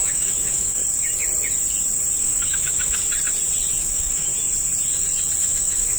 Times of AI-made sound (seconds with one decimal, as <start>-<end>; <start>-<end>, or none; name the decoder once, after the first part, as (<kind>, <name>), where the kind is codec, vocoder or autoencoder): 0.0-0.8 (autoencoder, DAC-VAE); 2.2-3.0; 3.8-4.3; 5.4-6.0